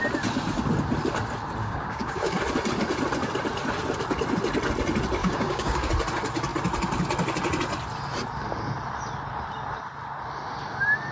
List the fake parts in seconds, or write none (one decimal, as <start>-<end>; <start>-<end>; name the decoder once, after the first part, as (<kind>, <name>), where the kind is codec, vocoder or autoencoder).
1.6-2.4 (codec, DAC); 5.2-5.9